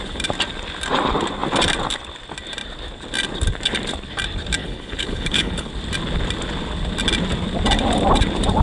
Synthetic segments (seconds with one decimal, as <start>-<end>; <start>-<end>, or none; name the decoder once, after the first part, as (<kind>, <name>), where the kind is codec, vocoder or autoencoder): 4.6-5.7 (codec, HILCodec)